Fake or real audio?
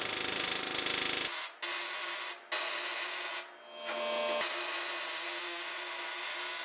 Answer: real